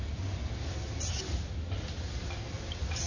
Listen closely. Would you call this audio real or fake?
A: real